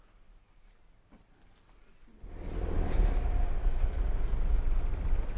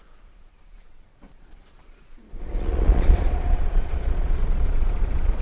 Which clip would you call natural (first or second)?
first